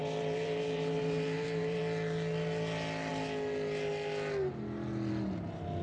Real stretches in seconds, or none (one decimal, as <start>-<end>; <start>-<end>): 1.8-5.8